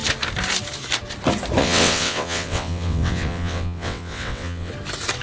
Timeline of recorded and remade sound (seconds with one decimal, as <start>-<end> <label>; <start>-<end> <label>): 0.0-1.6 recorded; 1.6-4.7 remade; 4.7-5.2 recorded